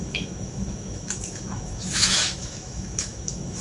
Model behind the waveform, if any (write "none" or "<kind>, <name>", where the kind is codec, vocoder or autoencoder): autoencoder, DAC-VAE